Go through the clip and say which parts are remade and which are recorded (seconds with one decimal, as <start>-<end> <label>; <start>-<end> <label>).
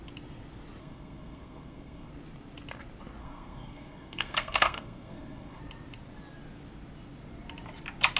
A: 0.0-0.8 recorded; 0.8-2.1 remade; 2.1-3.2 recorded; 3.2-5.6 remade; 5.6-8.2 recorded